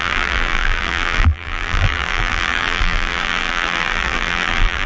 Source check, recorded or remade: remade